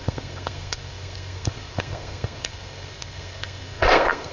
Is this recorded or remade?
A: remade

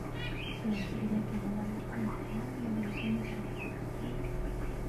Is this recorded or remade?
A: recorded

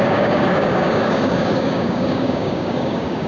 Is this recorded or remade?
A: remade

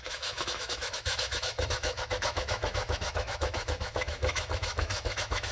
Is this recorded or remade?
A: remade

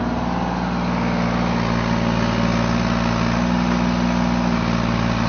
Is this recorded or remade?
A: recorded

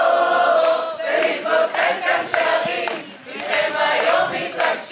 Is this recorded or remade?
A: recorded